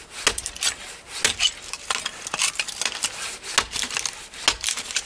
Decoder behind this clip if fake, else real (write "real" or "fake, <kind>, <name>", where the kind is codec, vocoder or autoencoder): real